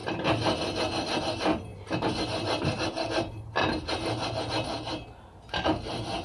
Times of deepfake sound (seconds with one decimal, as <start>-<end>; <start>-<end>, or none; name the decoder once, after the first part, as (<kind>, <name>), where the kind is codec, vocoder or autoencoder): none